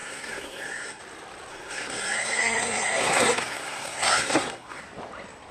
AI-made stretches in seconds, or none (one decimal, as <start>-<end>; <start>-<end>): 0.0-1.0; 1.5-4.8